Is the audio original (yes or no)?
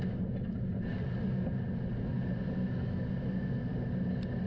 yes